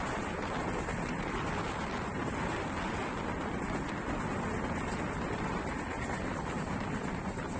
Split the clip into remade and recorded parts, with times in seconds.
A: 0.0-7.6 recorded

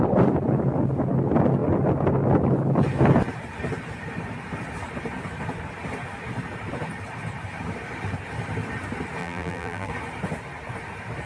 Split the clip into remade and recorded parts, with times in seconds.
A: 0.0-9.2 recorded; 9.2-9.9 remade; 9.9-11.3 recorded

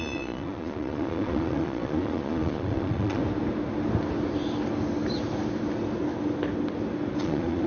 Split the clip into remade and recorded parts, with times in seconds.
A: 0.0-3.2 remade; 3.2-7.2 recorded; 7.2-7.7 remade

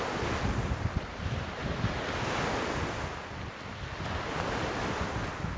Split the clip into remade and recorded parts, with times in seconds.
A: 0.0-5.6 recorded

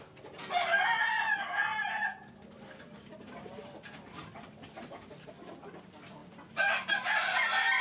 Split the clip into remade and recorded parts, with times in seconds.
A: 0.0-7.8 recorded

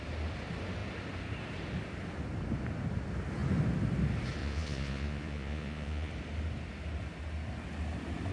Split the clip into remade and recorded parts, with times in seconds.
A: 0.0-4.4 recorded; 4.4-6.1 remade; 6.1-8.3 recorded

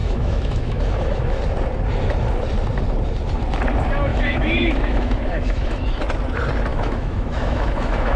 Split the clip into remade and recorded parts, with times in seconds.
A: 0.0-1.4 remade; 1.4-4.1 recorded; 4.1-6.0 remade; 6.0-6.7 recorded; 6.7-8.2 remade